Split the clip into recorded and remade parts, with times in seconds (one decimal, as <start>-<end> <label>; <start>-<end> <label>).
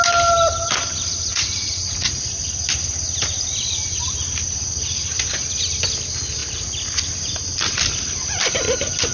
0.0-1.3 recorded; 1.3-2.2 remade; 2.2-9.1 recorded